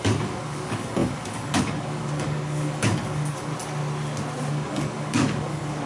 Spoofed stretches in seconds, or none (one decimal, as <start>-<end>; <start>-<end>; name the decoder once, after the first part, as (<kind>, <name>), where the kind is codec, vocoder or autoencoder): 0.0-3.5 (codec, DAC); 4.5-5.9